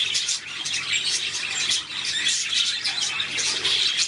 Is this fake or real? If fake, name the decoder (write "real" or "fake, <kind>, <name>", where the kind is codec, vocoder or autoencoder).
real